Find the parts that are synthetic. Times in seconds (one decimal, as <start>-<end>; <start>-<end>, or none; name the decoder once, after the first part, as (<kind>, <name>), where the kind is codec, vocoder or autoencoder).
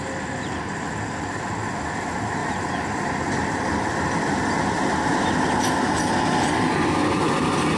2.4-3.4 (vocoder, BigVGAN v2)